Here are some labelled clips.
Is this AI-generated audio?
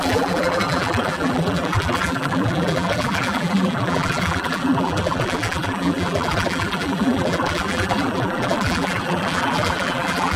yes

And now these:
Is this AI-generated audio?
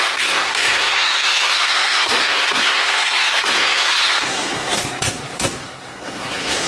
yes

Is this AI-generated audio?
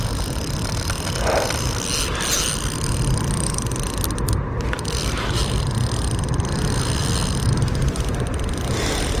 no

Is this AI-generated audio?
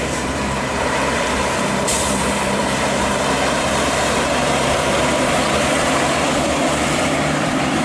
yes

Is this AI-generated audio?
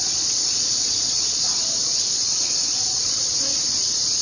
yes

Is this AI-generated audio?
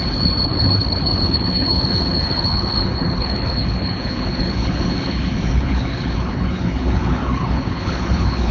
yes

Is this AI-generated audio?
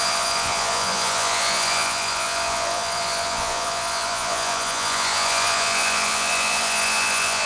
yes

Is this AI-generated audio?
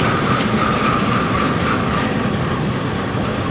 no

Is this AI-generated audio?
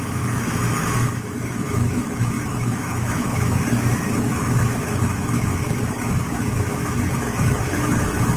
yes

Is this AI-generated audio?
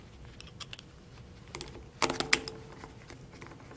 no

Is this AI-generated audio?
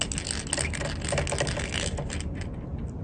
no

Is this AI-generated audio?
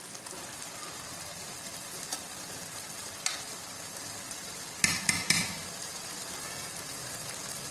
no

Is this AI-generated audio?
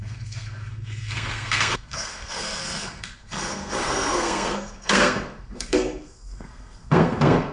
yes